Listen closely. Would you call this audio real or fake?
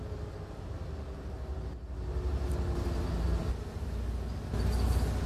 real